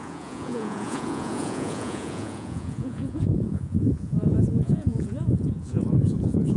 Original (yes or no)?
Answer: no